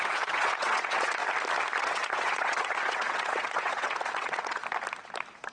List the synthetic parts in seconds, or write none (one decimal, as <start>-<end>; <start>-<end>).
0.0-1.2; 1.8-4.6

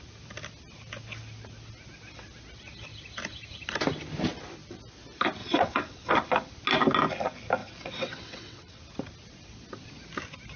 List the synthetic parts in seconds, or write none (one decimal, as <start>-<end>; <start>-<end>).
5.4-6.1; 7.6-8.8

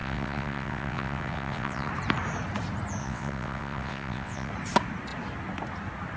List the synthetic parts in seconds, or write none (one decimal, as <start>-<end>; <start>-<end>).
0.0-1.9; 3.0-4.5

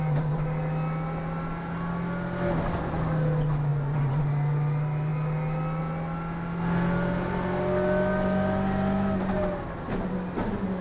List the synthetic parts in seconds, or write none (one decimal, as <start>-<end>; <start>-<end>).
none